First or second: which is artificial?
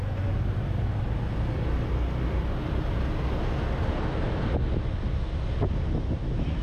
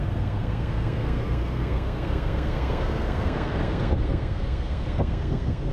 second